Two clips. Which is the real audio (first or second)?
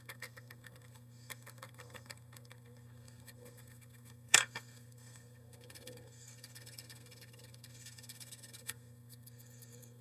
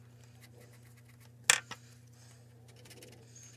second